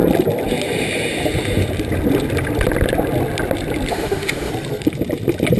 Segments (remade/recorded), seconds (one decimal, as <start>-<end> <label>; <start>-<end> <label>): 0.0-3.9 recorded; 3.9-4.5 remade; 4.5-5.6 recorded